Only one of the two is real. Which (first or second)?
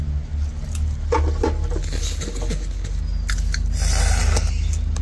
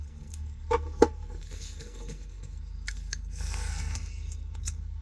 first